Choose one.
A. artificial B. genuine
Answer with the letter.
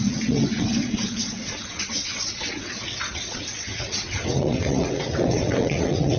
A